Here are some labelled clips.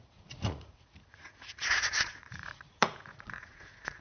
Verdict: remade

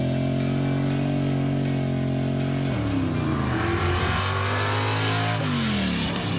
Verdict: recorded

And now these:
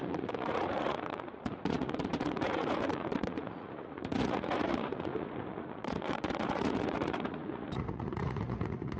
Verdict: remade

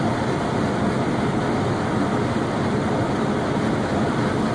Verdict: recorded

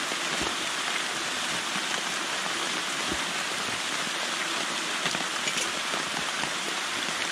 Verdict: recorded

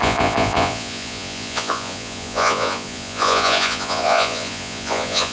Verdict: remade